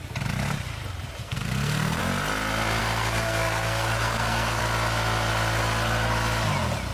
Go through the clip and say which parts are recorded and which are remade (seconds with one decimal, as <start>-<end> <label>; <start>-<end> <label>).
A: 0.0-1.2 recorded; 1.2-2.0 remade; 2.0-2.8 recorded; 2.8-4.6 remade; 4.6-6.9 recorded